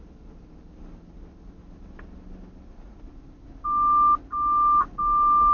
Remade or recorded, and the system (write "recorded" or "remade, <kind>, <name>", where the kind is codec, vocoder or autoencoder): recorded